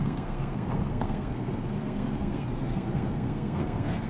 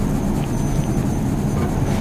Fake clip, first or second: first